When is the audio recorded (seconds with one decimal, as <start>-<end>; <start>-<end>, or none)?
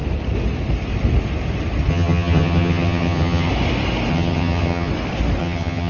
0.0-1.9; 3.5-4.1; 4.9-5.4